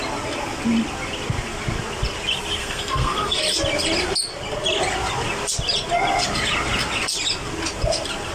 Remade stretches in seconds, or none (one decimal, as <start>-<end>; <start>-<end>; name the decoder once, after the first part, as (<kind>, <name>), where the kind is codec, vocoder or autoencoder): 2.6-3.4 (codec, SNAC)